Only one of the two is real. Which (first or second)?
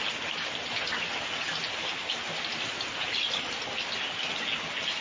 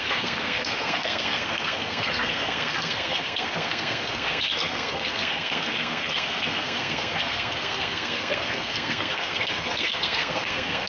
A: first